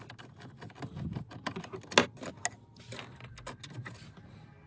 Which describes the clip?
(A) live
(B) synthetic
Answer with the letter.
A